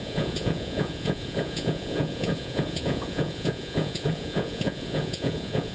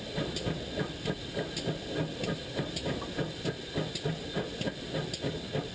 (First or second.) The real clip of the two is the second